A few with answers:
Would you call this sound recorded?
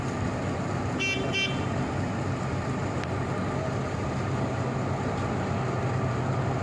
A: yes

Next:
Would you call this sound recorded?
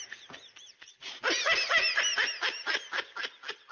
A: yes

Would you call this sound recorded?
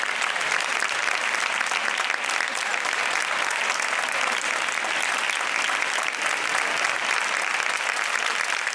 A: yes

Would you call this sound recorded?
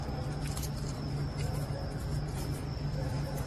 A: yes